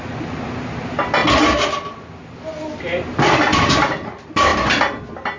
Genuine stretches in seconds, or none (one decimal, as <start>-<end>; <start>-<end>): 0.0-5.4